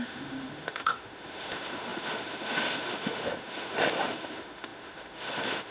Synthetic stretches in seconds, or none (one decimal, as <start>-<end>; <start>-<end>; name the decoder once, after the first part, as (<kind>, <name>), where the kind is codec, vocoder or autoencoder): 0.0-5.7 (autoencoder, DAC-VAE)